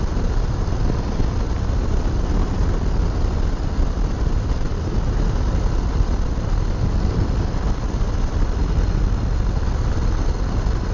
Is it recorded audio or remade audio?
recorded